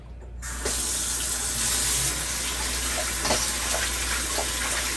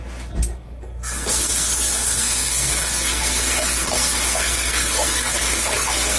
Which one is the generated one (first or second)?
second